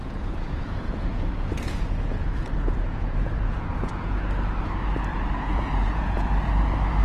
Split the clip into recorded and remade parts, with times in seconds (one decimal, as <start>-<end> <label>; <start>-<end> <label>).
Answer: 0.0-4.2 remade; 4.2-5.1 recorded; 5.1-6.3 remade; 6.3-7.0 recorded